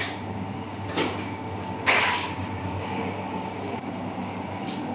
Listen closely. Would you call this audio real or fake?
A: fake